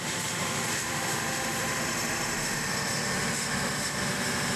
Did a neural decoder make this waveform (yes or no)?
yes